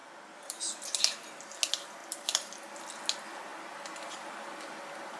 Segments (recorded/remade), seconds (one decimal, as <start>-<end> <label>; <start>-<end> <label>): 0.0-0.8 remade; 0.8-2.0 recorded; 2.0-2.5 remade; 2.5-5.2 recorded